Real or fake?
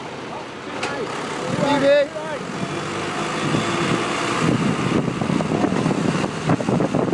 real